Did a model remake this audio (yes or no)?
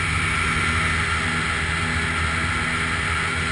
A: no